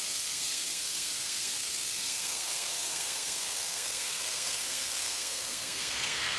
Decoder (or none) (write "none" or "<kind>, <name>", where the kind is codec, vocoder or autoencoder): codec, SNAC